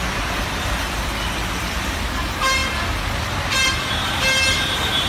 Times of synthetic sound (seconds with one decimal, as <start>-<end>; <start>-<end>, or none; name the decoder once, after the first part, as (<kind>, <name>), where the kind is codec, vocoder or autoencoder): 0.0-2.0 (vocoder, BigVGAN v2); 2.6-5.1